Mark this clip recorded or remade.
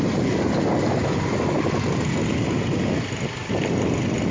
recorded